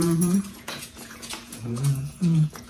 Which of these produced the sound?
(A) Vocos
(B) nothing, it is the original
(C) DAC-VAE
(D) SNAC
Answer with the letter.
A